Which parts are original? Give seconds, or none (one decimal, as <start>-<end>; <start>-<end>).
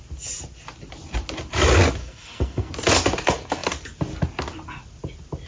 0.0-2.0; 2.7-5.5